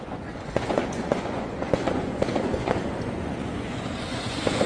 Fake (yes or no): yes